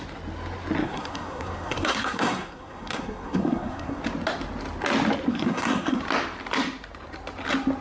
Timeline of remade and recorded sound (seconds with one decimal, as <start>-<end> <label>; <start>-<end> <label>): 0.0-0.8 recorded; 0.8-4.0 remade; 4.0-5.3 recorded; 5.3-6.0 remade; 6.0-7.8 recorded